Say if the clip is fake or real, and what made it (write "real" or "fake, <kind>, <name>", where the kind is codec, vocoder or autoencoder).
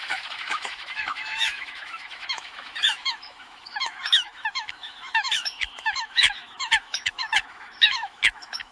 fake, autoencoder, DAC-VAE